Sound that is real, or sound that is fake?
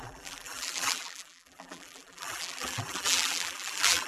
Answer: fake